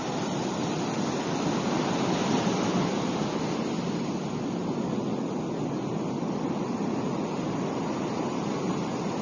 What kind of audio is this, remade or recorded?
recorded